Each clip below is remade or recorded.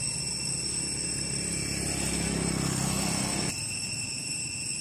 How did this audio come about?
recorded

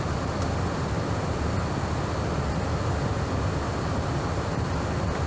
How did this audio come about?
recorded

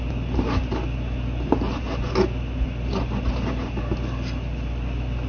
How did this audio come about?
recorded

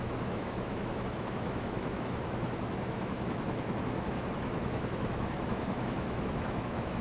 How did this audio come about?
remade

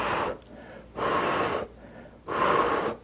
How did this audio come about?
recorded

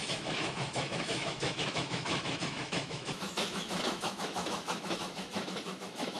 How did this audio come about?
remade